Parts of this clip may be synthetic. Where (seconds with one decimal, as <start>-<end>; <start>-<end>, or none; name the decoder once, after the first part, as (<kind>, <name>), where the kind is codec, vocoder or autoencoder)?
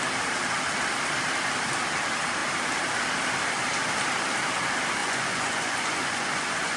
5.0-6.8 (vocoder, Vocos)